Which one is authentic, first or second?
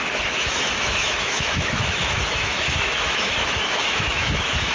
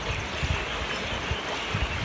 second